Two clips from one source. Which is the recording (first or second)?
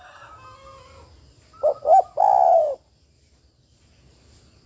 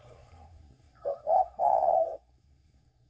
first